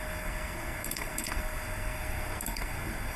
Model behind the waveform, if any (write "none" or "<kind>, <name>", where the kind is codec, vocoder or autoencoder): codec, SNAC